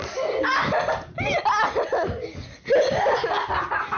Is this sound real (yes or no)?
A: yes